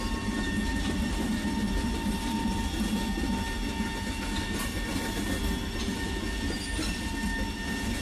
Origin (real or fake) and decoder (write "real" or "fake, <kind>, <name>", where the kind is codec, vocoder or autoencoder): real